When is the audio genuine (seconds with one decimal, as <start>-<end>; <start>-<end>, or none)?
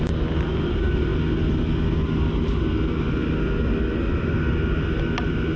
0.0-5.6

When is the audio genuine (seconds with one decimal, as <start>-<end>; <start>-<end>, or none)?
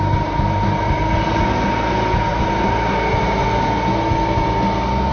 0.0-5.1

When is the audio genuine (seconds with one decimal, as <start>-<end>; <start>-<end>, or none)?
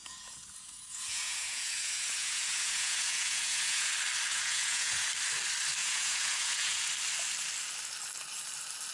3.9-4.3; 5.1-5.8; 6.9-8.9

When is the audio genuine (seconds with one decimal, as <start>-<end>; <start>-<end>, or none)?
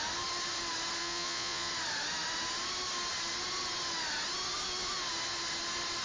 0.0-1.0; 1.7-6.0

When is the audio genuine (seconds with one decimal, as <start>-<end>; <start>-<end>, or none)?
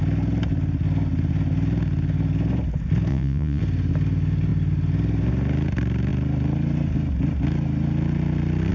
0.0-3.1; 3.6-8.7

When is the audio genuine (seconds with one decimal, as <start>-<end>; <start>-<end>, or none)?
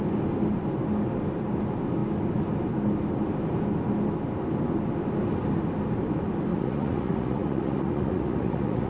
0.0-6.5